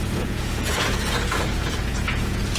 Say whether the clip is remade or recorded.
remade